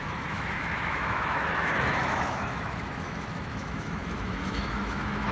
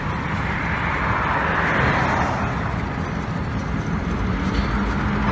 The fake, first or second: first